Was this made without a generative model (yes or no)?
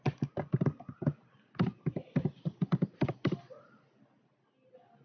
yes